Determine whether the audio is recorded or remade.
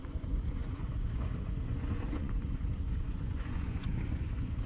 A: remade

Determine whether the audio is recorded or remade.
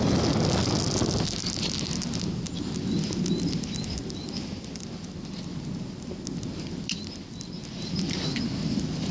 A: recorded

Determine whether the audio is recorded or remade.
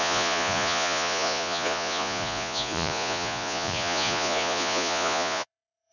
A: remade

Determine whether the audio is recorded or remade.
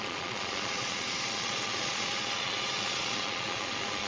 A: remade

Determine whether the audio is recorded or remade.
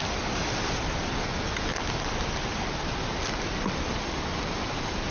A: recorded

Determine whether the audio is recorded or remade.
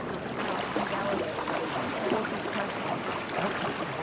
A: recorded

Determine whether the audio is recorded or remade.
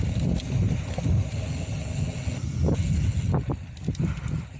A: recorded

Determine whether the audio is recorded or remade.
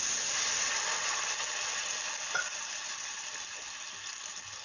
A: recorded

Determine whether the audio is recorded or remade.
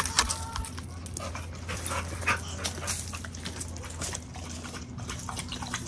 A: recorded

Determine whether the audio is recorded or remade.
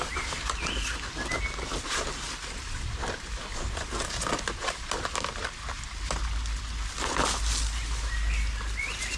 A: recorded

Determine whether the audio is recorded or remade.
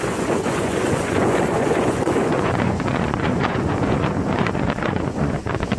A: remade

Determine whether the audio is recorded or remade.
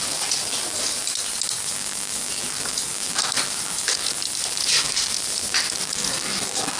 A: recorded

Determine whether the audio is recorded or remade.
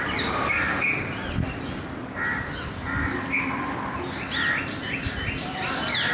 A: recorded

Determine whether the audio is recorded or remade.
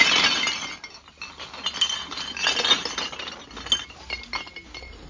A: recorded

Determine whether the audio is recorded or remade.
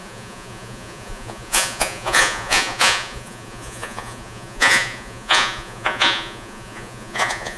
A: remade